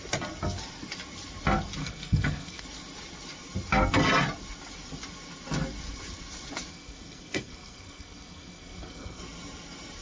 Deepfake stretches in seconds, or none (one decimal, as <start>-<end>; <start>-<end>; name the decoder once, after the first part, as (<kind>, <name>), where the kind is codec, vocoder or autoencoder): 1.8-2.6 (codec, SNAC); 6.7-9.2

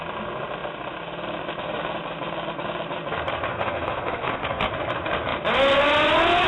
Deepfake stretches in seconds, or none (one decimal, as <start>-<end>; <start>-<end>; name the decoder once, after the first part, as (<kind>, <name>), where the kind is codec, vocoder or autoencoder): 3.5-4.7 (codec, SNAC)